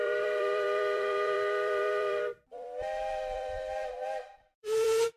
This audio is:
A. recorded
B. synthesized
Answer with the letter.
B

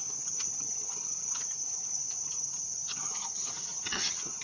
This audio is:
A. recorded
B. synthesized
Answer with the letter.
B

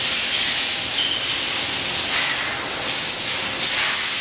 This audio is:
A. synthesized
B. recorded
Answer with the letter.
B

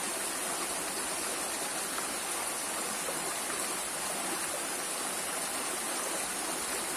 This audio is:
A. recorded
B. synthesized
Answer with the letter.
A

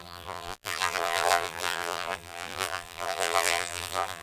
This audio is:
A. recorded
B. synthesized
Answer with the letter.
B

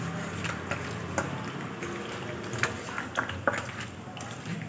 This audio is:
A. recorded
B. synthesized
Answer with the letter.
A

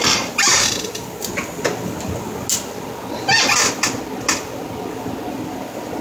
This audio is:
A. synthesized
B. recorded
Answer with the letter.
B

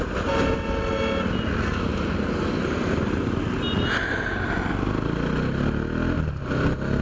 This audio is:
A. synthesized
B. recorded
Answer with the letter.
B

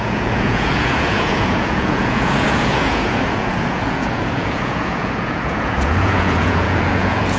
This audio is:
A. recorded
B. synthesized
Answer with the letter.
B